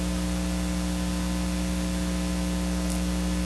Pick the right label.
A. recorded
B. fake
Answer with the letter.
A